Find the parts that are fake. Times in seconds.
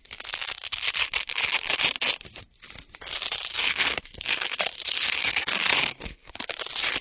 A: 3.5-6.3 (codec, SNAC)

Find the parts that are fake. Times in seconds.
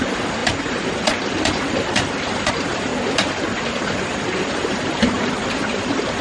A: 0.0-2.9 (vocoder, BigVGAN v2); 3.6-6.2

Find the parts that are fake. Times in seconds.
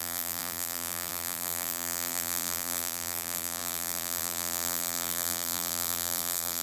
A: 0.0-6.6 (vocoder, BigVGAN v2)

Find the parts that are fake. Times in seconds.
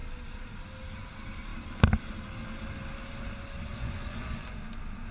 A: 3.8-4.6 (vocoder, Vocos)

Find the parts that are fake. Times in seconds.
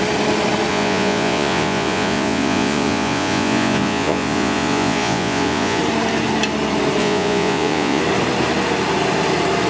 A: 0.7-5.8 (vocoder, Vocos); 7.0-8.0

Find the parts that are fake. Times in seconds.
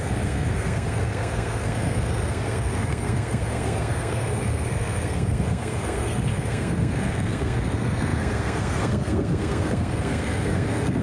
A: 0.0-11.0 (codec, SNAC)